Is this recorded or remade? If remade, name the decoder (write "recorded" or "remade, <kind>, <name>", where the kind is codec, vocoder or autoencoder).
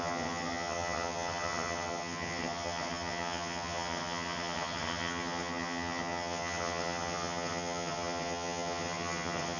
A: remade, vocoder, HiFi-GAN